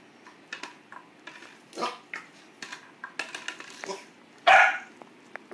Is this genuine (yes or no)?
yes